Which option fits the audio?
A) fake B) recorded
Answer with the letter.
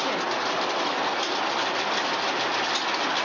B